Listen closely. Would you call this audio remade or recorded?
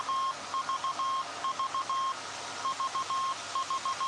recorded